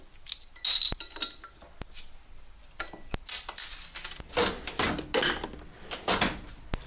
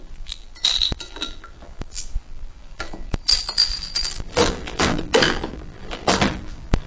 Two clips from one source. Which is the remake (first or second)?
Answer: second